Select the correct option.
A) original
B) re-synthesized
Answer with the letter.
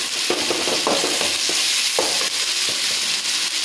A